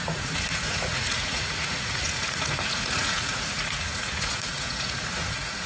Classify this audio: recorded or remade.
remade